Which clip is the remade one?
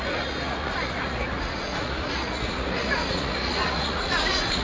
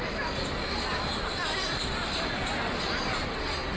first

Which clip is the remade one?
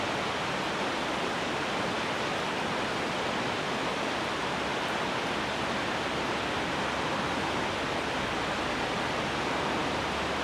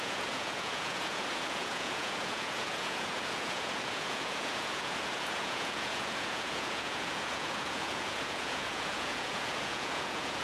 second